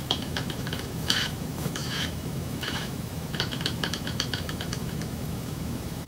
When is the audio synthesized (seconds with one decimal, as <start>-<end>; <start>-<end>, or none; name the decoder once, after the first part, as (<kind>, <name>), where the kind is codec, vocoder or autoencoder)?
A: 0.0-6.1 (autoencoder, DAC-VAE)